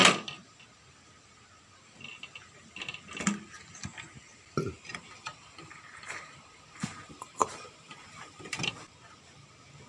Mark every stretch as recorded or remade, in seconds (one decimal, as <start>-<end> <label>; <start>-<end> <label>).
0.0-4.9 recorded; 4.9-8.8 remade; 8.8-9.9 recorded